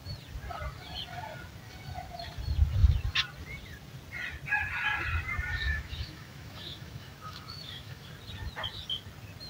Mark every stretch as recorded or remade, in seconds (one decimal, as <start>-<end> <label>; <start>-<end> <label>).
0.0-5.5 recorded; 5.5-8.1 remade; 8.1-9.5 recorded